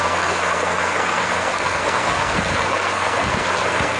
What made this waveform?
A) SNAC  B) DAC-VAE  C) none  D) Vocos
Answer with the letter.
A